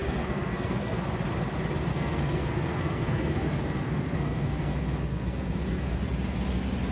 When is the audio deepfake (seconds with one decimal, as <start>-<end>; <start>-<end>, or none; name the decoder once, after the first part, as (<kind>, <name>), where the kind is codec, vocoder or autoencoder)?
0.0-1.0 (codec, SNAC); 1.9-6.0